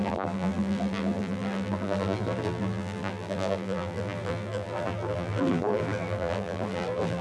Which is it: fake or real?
fake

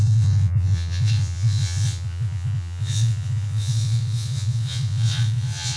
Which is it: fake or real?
fake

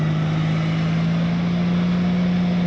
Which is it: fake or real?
real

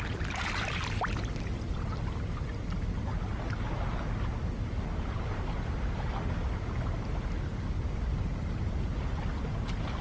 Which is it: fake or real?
real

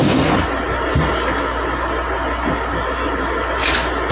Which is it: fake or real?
real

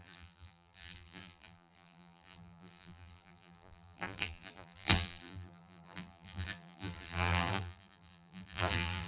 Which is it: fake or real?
fake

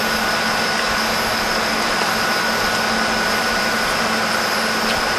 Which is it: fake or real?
real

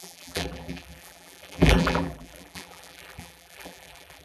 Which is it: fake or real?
fake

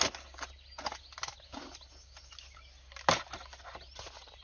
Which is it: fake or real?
real